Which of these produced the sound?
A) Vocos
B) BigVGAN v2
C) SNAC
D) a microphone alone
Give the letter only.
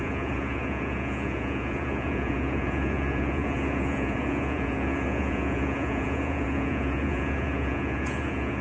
A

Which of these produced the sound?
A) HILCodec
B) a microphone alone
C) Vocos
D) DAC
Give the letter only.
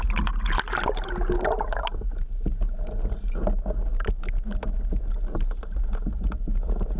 B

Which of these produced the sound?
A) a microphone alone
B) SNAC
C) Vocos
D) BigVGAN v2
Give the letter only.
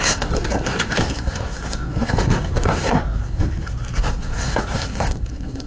B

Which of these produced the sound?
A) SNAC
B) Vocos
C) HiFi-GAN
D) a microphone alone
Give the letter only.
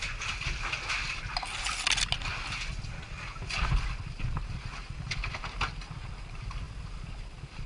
D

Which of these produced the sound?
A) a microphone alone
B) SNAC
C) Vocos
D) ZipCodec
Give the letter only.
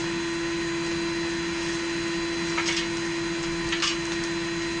A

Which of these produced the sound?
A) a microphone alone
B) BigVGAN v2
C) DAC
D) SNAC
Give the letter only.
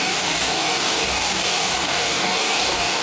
C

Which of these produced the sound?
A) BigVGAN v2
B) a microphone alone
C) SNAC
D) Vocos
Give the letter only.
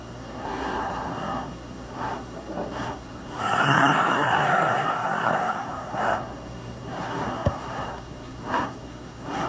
C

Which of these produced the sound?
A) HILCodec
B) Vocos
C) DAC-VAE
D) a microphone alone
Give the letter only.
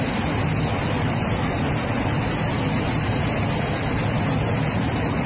D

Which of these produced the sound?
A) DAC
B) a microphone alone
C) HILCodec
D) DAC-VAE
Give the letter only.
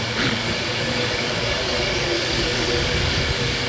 A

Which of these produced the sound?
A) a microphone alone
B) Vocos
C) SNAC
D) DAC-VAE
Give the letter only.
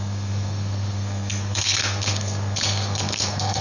C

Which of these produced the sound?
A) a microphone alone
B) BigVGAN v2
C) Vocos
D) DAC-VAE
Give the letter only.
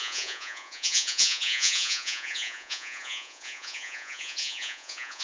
C